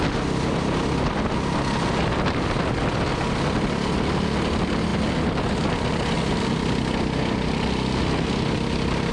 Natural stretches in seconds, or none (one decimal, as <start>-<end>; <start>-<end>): 0.0-9.1